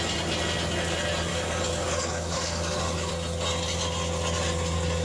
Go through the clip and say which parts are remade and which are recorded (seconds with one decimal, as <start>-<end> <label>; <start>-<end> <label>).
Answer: 0.0-1.3 recorded; 1.3-3.1 remade; 3.1-5.0 recorded